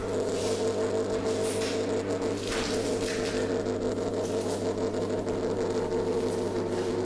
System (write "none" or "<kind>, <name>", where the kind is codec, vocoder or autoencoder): none